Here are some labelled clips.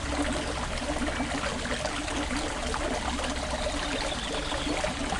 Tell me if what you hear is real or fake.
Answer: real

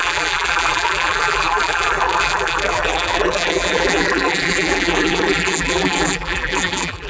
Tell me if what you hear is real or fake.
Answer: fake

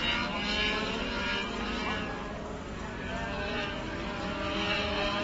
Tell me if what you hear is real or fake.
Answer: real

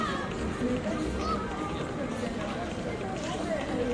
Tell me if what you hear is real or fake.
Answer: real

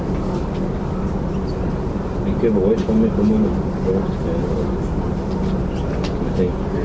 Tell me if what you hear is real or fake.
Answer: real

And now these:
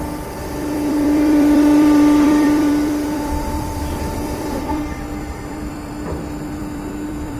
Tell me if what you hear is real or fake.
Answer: fake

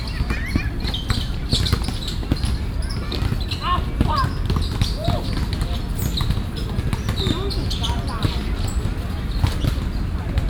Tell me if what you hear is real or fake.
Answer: real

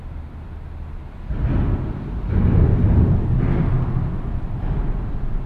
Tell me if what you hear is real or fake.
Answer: real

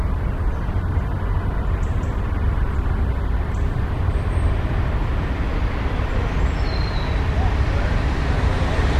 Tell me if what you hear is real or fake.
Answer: real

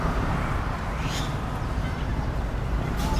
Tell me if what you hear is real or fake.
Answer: fake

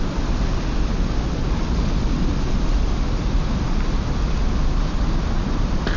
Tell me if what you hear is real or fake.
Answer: real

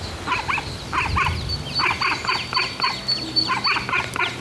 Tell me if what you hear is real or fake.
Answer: real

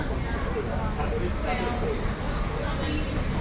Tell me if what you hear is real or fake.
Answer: real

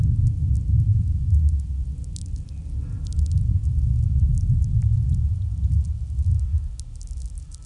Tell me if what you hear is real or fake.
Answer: real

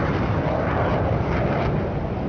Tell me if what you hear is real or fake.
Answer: fake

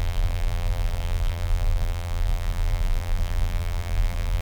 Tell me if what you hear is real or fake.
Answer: fake